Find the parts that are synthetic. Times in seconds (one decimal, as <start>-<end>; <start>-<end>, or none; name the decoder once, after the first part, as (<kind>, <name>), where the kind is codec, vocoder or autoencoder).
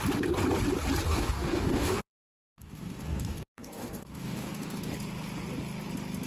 1.1-4.9 (codec, DAC)